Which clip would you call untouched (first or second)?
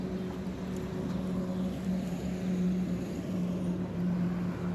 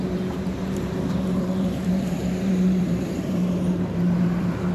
first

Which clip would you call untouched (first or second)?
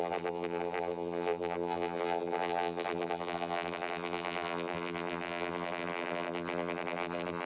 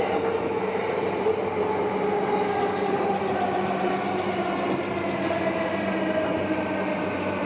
second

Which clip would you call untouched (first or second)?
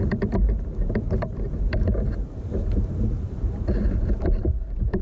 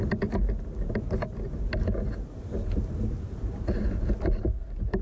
second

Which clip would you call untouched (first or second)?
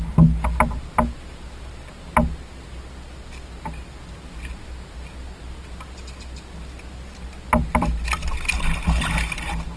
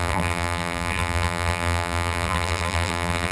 first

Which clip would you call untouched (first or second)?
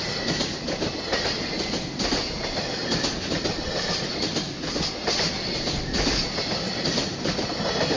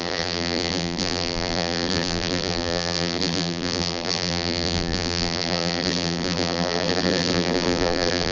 first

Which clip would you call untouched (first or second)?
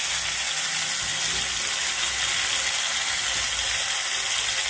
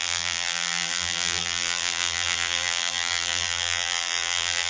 first